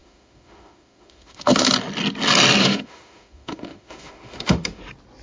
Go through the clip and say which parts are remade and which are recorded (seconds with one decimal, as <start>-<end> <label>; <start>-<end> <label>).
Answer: 0.0-1.7 remade; 1.7-2.6 recorded; 2.6-4.8 remade; 4.8-5.2 recorded